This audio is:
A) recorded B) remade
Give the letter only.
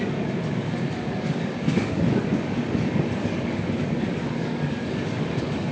B